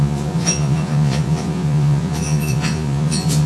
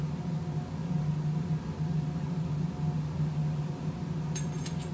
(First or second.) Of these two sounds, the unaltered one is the second